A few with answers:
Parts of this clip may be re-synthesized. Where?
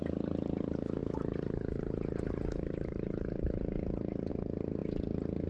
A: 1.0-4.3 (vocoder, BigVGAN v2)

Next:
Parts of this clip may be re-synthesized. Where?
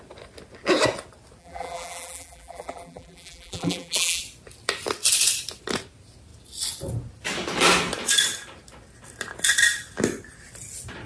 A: 1.4-4.2 (vocoder, BigVGAN v2)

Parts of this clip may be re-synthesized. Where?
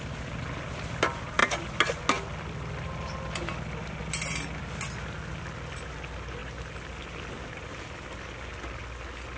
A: none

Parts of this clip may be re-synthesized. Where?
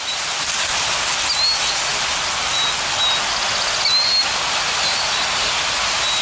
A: none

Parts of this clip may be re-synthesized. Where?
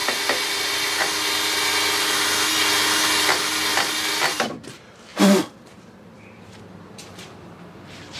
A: 3.7-4.5 (vocoder, BigVGAN v2); 5.1-7.5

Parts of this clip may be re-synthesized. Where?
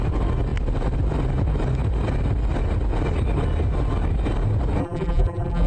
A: 4.8-5.7 (vocoder, BigVGAN v2)